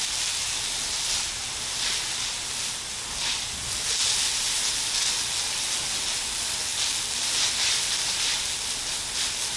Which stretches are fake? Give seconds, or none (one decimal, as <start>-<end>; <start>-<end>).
none